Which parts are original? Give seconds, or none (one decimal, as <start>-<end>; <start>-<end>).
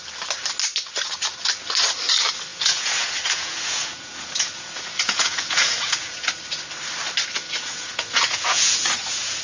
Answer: 0.0-2.5; 6.3-7.4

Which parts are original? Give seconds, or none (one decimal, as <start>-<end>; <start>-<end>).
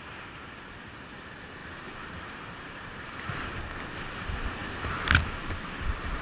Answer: 0.0-1.6; 3.6-6.2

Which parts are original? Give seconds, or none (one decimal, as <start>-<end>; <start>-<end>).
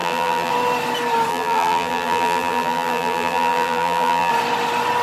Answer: 0.5-1.3; 4.3-5.0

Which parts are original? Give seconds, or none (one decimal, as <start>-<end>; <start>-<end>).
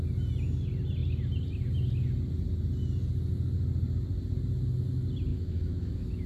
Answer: 0.0-5.3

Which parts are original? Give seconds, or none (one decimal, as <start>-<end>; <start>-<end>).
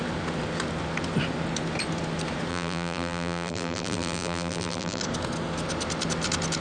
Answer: 0.0-2.5; 5.0-6.6